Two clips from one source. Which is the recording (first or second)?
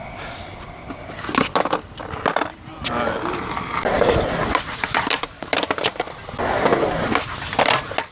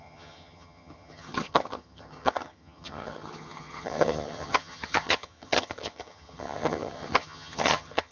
first